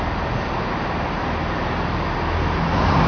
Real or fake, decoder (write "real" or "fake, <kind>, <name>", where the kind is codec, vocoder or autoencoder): real